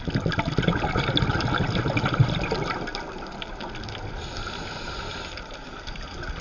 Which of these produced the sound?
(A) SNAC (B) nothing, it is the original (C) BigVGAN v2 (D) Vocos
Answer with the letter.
B